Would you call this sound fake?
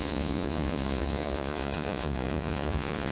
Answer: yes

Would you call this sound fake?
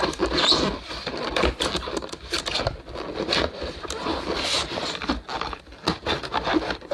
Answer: yes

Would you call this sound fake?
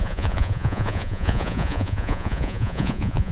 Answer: yes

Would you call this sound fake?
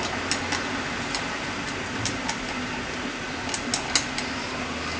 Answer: no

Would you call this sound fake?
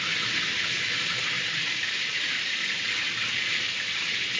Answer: yes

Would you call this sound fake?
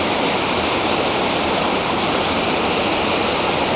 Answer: no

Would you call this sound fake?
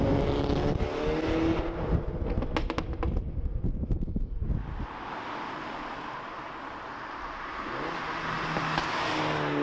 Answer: no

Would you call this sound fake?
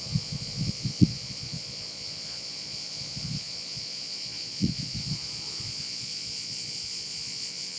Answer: yes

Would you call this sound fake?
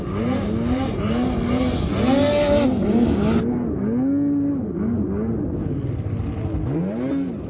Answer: no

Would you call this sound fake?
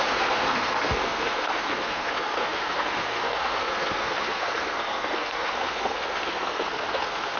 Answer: yes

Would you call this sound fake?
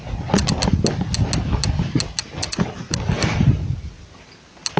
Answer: no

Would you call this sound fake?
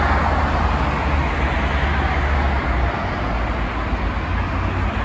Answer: no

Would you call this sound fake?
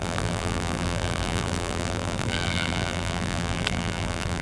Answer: yes